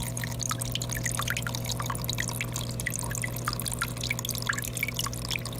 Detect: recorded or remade recorded